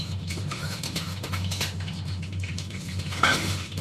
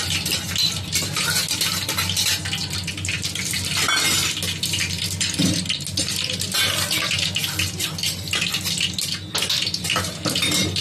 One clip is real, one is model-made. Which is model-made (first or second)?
first